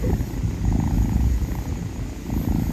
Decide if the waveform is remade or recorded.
recorded